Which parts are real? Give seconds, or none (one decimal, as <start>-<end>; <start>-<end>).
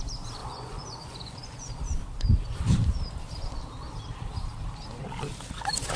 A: 0.0-0.4; 1.7-6.0